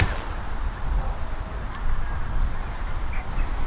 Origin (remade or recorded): recorded